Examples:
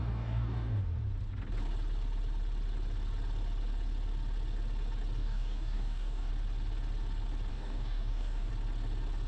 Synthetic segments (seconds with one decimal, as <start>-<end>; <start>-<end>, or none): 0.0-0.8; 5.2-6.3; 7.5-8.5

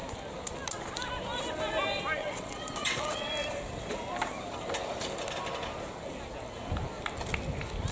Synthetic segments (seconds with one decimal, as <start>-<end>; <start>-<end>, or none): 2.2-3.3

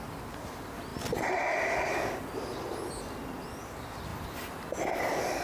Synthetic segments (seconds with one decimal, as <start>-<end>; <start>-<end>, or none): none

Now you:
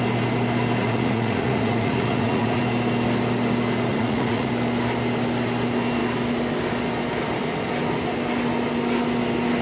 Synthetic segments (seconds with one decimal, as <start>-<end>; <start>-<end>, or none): 0.8-2.6; 3.9-4.5

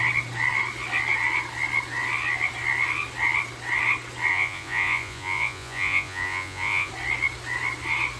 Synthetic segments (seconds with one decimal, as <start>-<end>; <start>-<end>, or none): 4.3-6.9

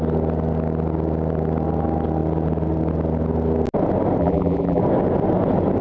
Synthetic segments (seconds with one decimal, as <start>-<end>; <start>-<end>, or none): 4.2-4.8

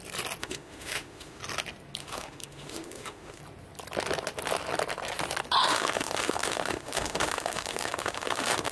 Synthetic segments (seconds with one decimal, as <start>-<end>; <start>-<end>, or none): 0.4-1.4; 2.0-3.4; 5.6-8.7

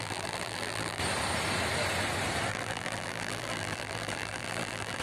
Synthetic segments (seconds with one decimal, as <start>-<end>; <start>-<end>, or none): 0.0-1.0; 2.5-5.0